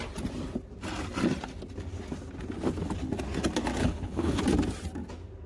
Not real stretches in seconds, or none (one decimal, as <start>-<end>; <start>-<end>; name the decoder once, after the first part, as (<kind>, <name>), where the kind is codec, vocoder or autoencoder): 3.8-4.4 (codec, HILCodec)